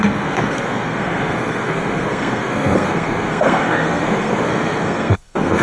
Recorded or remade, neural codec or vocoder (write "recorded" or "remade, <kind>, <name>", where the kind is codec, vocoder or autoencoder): remade, codec, SNAC